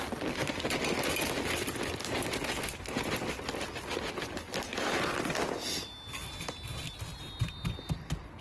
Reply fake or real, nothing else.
real